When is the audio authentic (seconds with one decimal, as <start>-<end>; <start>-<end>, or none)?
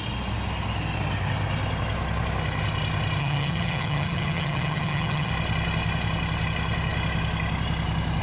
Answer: 0.0-3.2; 5.3-8.2